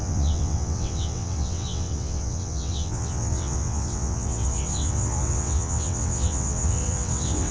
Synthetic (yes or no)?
yes